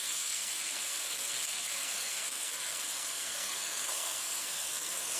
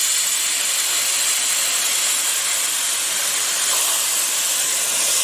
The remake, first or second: first